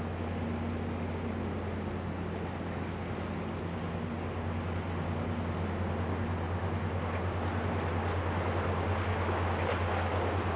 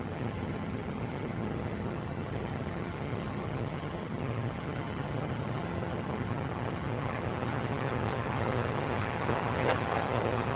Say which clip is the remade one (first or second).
second